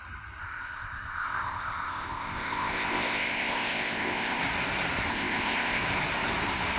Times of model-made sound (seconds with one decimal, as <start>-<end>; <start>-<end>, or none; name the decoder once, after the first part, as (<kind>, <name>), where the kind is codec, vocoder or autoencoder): 0.4-4.4 (codec, ZipCodec); 5.1-5.8